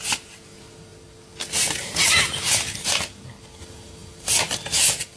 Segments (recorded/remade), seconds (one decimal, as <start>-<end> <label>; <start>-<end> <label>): 0.0-5.2 recorded